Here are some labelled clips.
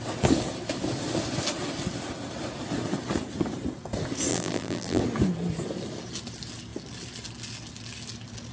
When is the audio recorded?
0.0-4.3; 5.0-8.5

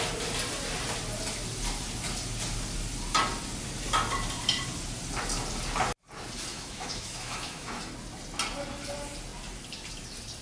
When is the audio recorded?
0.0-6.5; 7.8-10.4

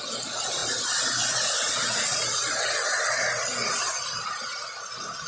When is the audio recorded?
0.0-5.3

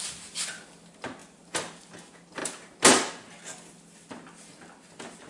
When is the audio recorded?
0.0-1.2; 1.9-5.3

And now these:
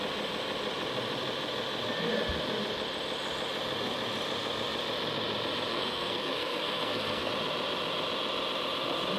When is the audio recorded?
0.0-5.7; 7.3-9.2

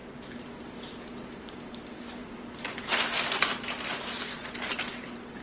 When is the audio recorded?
0.7-2.2; 3.3-5.4

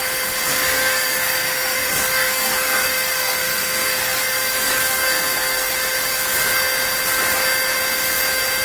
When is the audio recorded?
0.0-0.5; 5.7-8.6

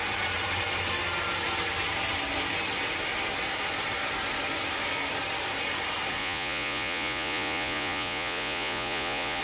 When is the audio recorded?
0.0-6.2